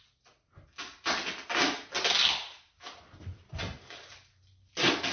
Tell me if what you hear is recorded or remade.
recorded